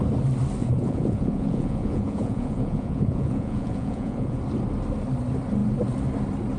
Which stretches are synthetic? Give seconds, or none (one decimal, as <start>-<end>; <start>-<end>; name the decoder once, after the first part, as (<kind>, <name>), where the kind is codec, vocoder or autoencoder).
0.6-4.4 (vocoder, Vocos)